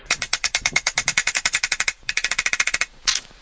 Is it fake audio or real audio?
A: fake